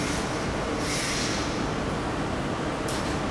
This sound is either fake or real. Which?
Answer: real